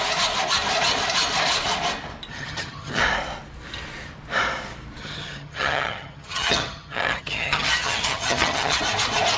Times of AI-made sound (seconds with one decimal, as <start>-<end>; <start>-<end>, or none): 2.3-3.0; 5.0-8.8